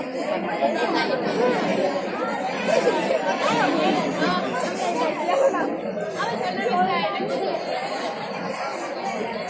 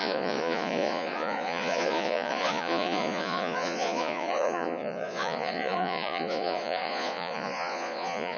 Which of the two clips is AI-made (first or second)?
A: second